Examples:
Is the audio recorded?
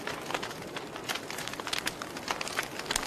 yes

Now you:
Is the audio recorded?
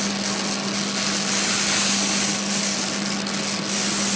yes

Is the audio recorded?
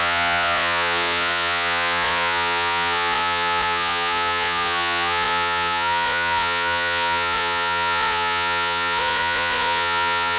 no